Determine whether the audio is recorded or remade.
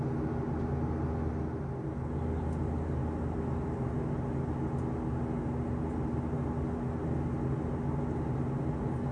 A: recorded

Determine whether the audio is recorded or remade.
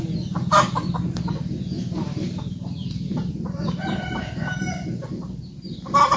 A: remade